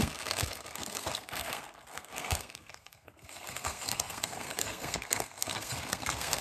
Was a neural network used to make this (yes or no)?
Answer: yes